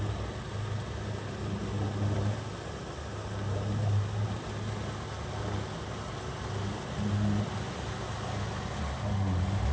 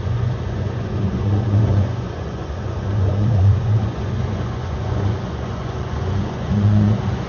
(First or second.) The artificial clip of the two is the second